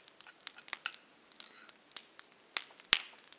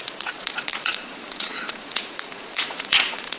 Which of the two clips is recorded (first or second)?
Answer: first